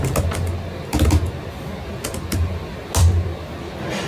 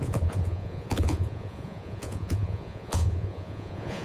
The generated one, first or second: second